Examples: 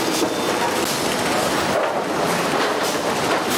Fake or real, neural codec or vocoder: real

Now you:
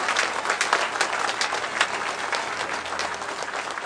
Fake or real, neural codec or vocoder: real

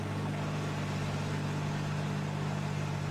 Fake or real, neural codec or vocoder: real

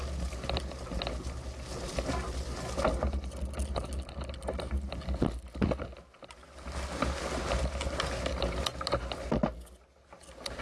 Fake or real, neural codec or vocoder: real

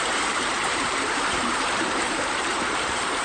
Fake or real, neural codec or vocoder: fake, vocoder, BigVGAN v2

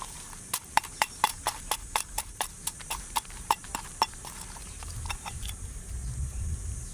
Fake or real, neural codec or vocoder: fake, vocoder, BigVGAN v2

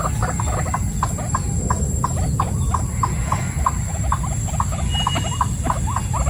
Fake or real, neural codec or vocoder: real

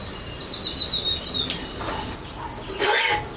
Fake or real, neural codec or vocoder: real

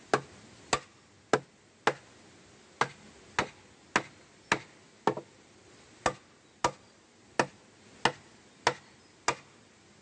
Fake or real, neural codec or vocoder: real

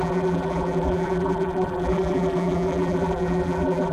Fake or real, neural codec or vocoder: fake, vocoder, BigVGAN v2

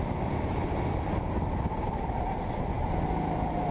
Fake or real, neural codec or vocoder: real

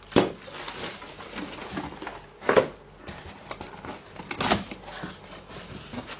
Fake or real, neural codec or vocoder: real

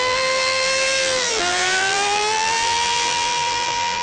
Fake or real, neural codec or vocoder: fake, vocoder, BigVGAN v2